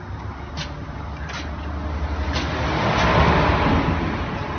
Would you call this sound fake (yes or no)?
no